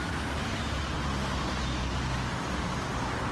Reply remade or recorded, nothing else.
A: recorded